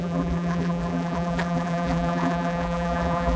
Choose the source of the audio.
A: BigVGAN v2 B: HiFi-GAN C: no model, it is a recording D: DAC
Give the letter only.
A